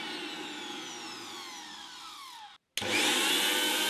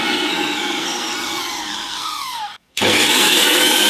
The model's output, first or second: second